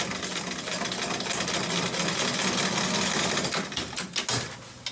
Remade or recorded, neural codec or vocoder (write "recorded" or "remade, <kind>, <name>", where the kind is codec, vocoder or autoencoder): recorded